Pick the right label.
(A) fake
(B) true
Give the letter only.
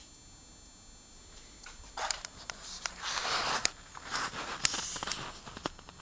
B